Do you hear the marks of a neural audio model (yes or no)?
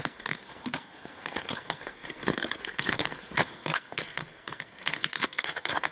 yes